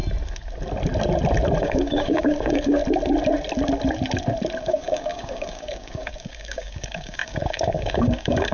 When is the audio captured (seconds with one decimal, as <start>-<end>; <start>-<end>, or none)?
0.0-1.6; 2.8-4.6